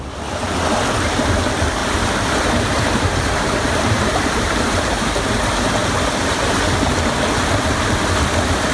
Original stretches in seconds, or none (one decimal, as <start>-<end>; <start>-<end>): 0.0-1.8; 5.0-8.7